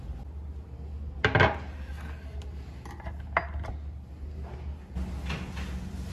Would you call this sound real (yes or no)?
yes